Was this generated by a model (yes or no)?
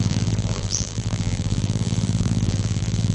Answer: yes